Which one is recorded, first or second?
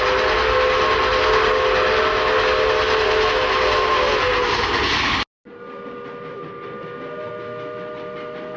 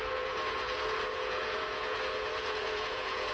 first